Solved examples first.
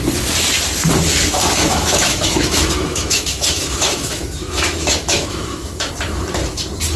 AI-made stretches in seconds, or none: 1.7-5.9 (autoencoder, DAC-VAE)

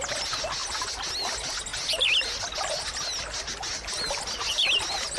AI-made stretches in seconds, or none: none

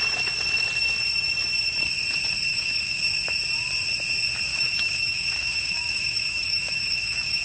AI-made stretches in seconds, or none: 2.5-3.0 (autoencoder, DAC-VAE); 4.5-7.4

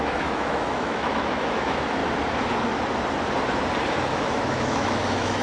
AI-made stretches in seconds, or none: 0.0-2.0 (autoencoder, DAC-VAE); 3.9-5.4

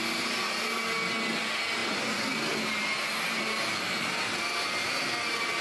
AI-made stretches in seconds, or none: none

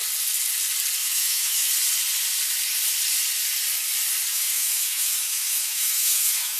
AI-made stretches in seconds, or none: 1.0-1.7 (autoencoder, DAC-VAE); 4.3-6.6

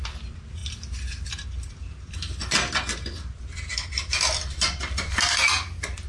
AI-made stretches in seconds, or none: none